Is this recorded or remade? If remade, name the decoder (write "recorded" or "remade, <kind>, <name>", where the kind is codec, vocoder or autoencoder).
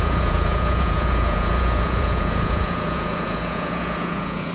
remade, vocoder, Vocos